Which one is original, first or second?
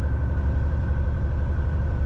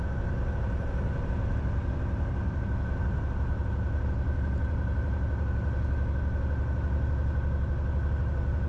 second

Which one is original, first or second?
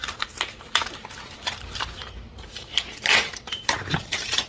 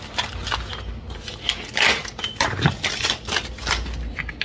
second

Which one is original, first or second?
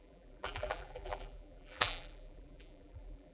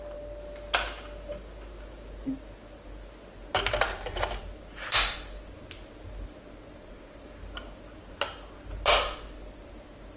second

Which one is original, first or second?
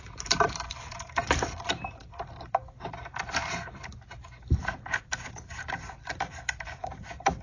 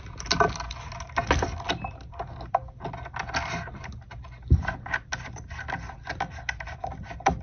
second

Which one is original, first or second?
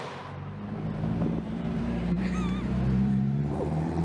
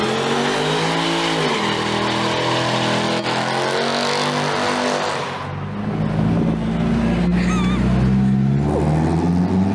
second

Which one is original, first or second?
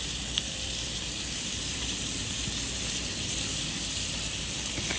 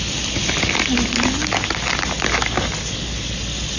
second